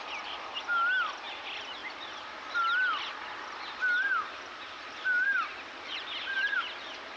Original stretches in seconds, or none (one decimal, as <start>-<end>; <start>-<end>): 0.0-7.2